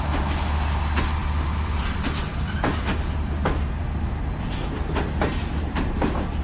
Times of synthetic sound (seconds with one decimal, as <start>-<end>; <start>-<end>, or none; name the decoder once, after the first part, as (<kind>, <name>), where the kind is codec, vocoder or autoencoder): none